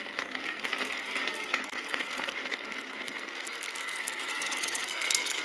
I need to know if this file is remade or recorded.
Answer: remade